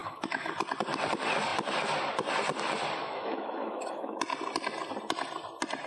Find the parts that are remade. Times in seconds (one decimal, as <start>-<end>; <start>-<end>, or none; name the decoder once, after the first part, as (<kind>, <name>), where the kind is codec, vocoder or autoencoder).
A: 0.0-0.5 (autoencoder, DAC-VAE); 3.0-4.2